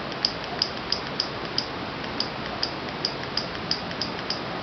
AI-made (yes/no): no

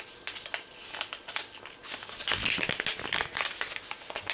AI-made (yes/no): no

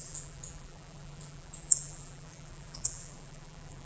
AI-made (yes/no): yes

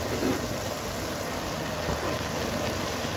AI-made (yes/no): no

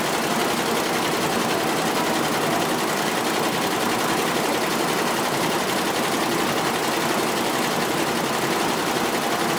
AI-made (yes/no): no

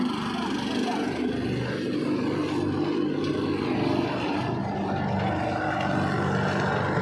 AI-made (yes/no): no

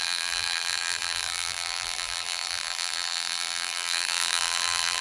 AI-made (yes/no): yes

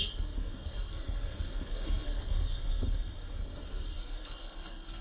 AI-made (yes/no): yes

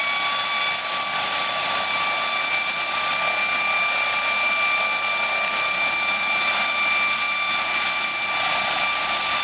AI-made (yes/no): no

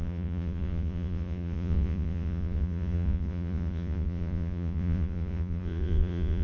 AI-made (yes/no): yes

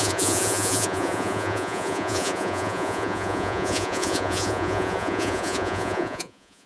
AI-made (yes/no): yes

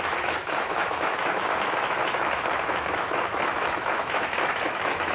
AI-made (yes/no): yes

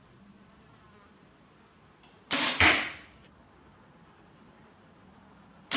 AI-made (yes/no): no